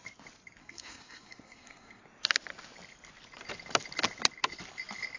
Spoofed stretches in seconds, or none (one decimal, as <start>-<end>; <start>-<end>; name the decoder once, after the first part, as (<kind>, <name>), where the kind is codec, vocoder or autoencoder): 0.6-2.0 (codec, SNAC)